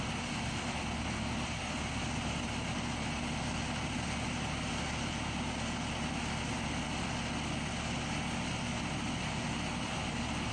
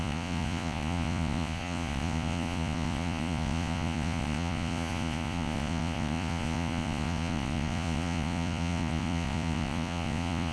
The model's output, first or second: second